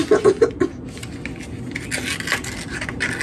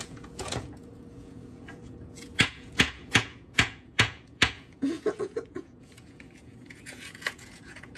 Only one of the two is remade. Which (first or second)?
second